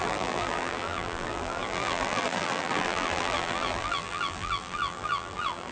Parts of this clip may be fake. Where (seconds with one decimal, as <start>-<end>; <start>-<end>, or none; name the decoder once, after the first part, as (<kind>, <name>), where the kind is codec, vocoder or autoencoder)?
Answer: 0.0-5.7 (vocoder, BigVGAN v2)